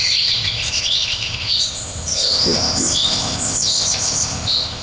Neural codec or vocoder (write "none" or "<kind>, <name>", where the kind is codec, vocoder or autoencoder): codec, ZipCodec